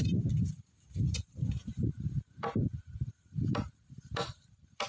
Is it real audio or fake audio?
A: fake